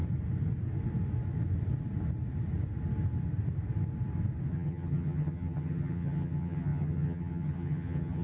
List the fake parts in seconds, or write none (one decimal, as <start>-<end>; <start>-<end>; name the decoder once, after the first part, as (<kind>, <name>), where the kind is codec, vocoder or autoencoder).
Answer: 4.5-8.2 (vocoder, HiFi-GAN)